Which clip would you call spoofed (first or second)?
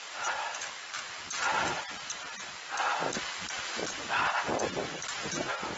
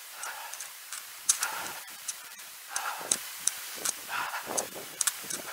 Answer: second